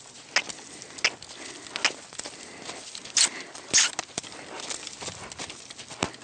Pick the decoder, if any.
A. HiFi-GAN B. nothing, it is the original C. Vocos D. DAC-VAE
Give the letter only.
B